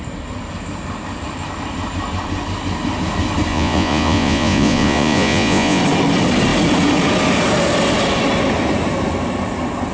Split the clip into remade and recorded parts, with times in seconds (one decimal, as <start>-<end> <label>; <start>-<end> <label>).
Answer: 0.0-3.5 recorded; 3.5-5.8 remade; 5.8-9.9 recorded